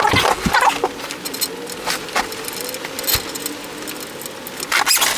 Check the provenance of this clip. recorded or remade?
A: recorded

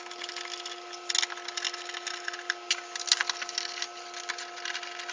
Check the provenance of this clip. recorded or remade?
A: recorded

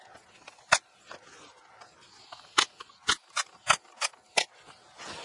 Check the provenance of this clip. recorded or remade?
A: recorded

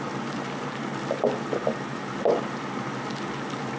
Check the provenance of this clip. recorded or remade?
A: recorded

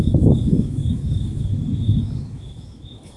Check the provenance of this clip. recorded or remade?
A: remade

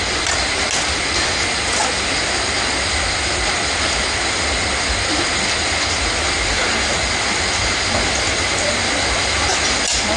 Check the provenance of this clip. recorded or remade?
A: recorded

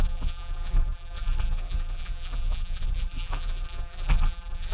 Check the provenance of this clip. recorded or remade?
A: remade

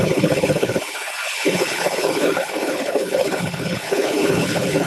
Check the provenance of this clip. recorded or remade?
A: remade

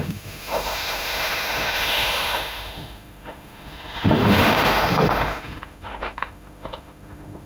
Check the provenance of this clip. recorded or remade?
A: remade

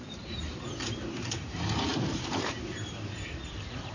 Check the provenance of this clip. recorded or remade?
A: remade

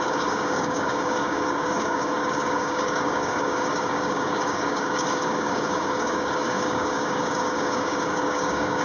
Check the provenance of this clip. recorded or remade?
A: remade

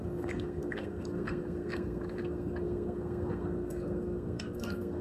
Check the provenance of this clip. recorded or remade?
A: remade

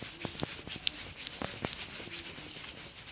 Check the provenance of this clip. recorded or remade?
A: recorded